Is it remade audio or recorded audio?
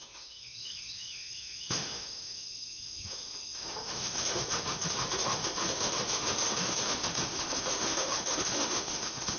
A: remade